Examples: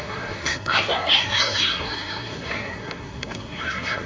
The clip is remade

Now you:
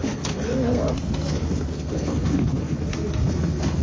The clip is remade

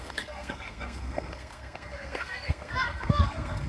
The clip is remade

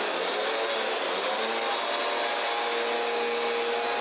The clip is recorded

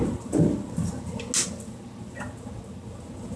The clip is recorded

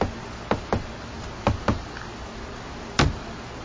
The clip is recorded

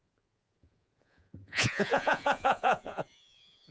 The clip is remade